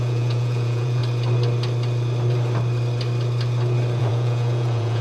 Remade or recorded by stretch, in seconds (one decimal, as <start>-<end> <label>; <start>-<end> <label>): 0.0-1.0 remade; 1.0-4.0 recorded; 4.0-5.0 remade

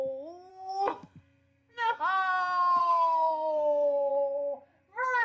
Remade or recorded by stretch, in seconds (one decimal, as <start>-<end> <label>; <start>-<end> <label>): 0.0-0.5 recorded; 0.5-2.0 remade; 2.0-2.8 recorded; 2.8-4.1 remade; 4.1-5.2 recorded

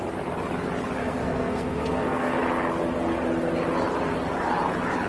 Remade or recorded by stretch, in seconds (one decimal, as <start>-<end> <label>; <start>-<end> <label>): 0.0-1.0 recorded; 1.0-2.4 remade; 2.4-5.1 recorded

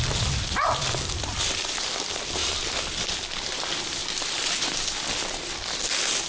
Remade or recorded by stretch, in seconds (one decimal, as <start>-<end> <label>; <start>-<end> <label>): 0.0-6.3 recorded

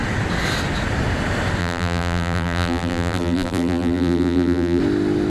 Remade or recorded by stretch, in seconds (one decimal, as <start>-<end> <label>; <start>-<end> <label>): 0.0-1.6 recorded; 1.6-4.8 remade; 4.8-5.3 recorded

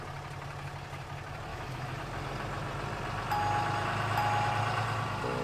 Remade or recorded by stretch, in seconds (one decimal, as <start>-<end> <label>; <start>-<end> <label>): 0.0-1.5 recorded; 1.5-2.0 remade; 2.0-5.4 recorded

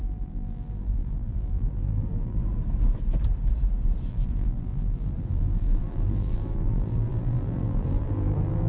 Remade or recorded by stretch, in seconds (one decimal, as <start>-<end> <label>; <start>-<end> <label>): 0.0-2.4 remade; 2.4-4.1 recorded; 4.1-8.7 remade